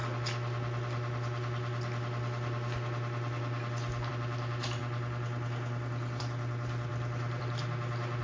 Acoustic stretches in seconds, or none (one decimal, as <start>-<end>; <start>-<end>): 0.0-8.2